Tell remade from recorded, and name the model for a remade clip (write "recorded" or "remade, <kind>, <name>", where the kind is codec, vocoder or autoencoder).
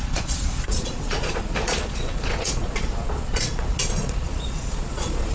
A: remade, vocoder, Vocos